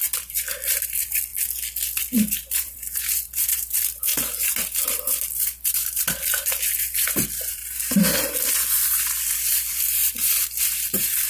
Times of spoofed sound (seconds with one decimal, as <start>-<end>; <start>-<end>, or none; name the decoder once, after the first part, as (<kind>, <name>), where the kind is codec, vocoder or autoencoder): 0.0-1.3 (vocoder, BigVGAN v2); 2.0-4.1; 4.8-7.6; 8.3-11.3